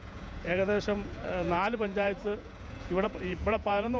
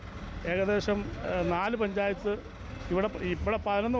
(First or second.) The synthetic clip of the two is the first